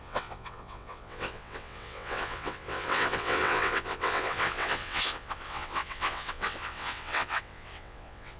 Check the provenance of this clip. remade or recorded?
remade